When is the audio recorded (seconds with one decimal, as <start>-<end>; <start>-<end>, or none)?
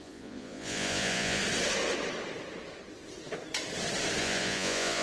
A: 1.4-4.2